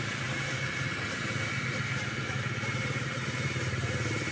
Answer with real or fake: real